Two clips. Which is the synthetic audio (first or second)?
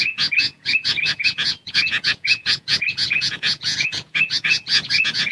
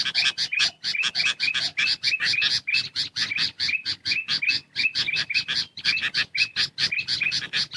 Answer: first